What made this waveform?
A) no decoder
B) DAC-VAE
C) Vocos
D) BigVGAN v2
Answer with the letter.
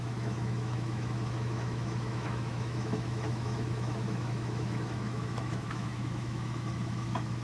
B